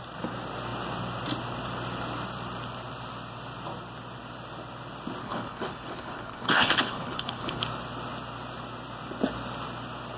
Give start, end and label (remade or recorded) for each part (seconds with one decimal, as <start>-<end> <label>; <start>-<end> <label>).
0.0-5.2 recorded; 5.2-7.6 remade; 7.6-10.2 recorded